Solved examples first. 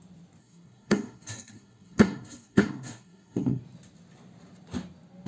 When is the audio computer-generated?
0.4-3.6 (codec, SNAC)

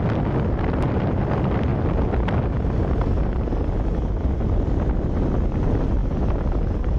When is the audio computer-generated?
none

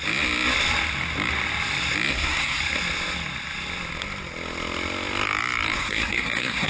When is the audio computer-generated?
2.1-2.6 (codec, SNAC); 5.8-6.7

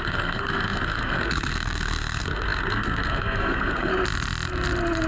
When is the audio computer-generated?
0.0-3.9 (codec, SNAC)

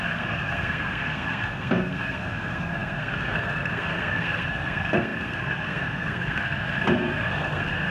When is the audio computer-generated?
0.0-7.9 (codec, SNAC)